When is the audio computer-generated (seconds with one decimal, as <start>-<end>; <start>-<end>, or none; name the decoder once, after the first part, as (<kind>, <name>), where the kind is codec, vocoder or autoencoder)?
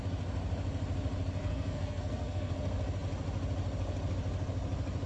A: 1.4-2.5 (codec, SNAC)